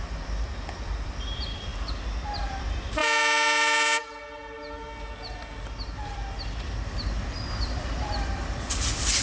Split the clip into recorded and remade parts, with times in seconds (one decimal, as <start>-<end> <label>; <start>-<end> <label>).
0.0-1.7 remade; 1.7-2.4 recorded; 2.4-3.0 remade; 3.0-7.5 recorded; 7.5-9.2 remade